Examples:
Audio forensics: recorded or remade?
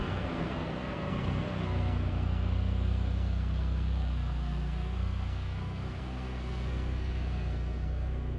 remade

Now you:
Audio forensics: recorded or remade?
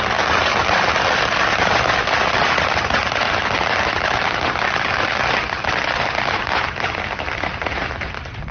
recorded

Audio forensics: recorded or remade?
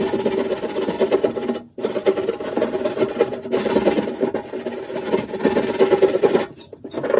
recorded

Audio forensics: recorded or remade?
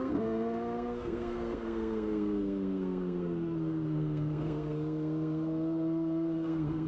remade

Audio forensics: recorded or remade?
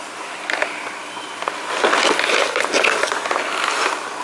recorded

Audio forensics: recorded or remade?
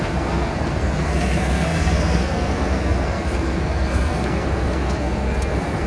remade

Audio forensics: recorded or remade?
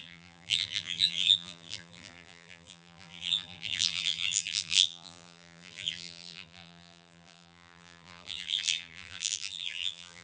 remade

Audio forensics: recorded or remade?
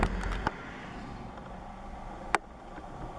recorded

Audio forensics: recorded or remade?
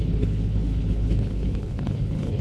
remade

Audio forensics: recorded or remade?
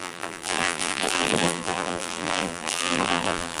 remade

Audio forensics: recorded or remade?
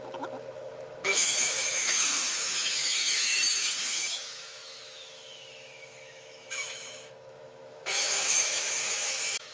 remade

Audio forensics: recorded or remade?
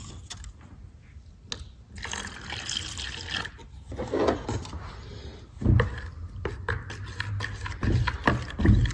recorded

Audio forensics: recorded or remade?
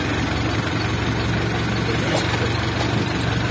recorded